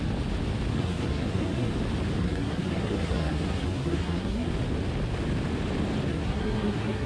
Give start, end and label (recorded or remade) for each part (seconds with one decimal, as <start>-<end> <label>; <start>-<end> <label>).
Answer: 0.0-0.7 recorded; 0.7-1.7 remade; 1.7-2.2 recorded; 2.2-4.5 remade; 4.5-6.1 recorded; 6.1-7.1 remade